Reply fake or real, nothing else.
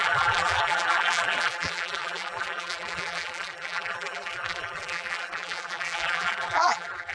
fake